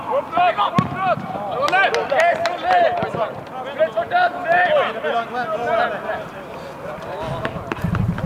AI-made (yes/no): no